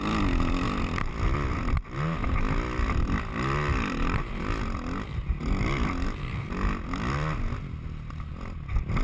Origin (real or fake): real